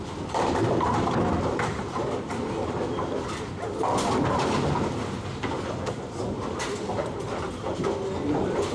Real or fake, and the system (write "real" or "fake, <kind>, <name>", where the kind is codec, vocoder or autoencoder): real